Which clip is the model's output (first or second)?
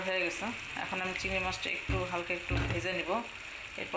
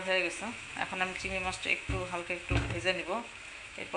second